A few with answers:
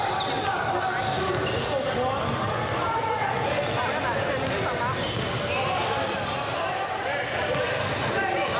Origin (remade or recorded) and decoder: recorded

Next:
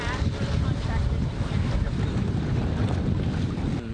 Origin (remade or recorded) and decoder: recorded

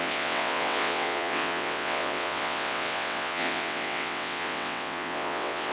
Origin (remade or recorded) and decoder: remade, vocoder, WaveNeXt